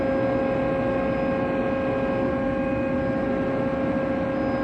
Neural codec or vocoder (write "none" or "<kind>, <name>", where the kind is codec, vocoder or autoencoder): none